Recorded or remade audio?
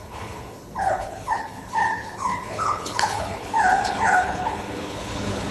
remade